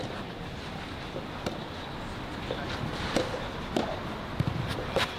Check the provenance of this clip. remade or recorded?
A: recorded